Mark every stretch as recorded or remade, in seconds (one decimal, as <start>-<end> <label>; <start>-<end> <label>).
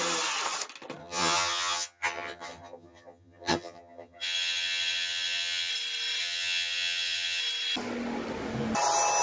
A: 0.0-1.0 recorded; 1.0-5.7 remade; 5.7-6.2 recorded; 6.2-7.4 remade; 7.4-9.2 recorded